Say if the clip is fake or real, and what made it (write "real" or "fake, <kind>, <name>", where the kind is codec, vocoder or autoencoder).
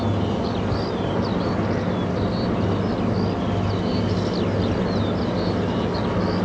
real